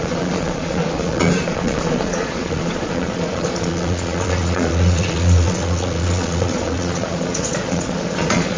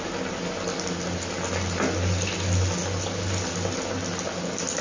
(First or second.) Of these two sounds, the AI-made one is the first